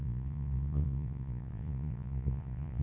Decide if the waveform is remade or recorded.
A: remade